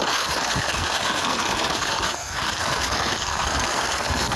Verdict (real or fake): fake